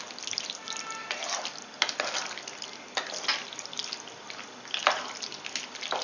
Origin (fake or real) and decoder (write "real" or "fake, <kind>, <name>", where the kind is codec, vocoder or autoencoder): real